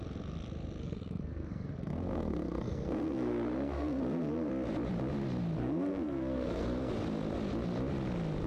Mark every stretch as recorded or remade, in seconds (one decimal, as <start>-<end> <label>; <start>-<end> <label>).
0.0-0.8 recorded; 0.8-4.5 remade; 4.5-5.6 recorded; 5.6-6.9 remade; 6.9-8.5 recorded